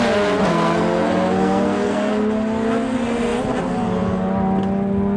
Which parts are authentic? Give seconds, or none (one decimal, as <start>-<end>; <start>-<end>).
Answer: 0.0-0.5; 2.1-5.2